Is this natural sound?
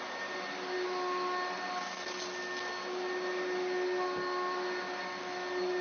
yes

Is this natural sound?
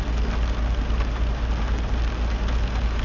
yes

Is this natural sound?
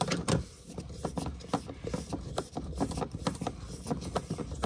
yes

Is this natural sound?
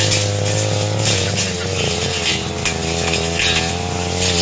yes